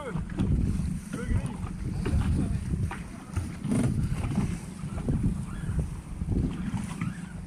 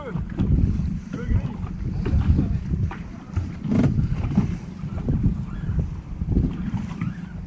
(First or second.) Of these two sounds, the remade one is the second